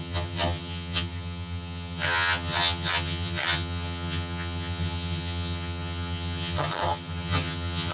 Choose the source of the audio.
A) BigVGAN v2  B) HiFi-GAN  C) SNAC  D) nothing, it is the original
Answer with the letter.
B